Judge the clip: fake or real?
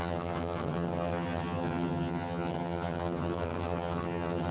fake